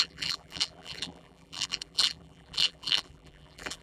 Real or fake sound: fake